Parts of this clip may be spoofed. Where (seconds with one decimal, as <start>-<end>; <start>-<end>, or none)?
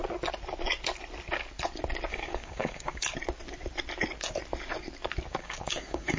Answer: 2.1-3.1; 5.3-6.2